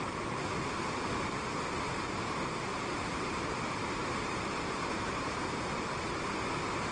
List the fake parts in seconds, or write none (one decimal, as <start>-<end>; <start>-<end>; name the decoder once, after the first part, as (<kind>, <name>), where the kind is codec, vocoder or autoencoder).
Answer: 2.7-6.3 (vocoder, BigVGAN v2)